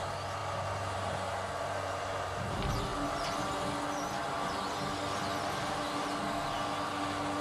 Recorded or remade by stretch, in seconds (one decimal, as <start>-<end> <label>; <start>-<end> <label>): 0.0-0.4 recorded; 0.4-2.4 remade; 2.4-7.4 recorded